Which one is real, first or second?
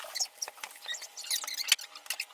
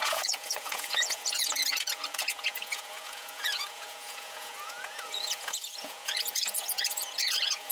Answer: first